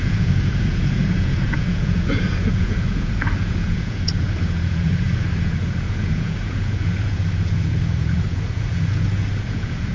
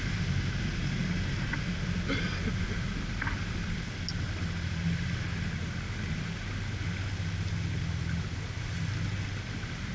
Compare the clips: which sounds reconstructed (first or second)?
first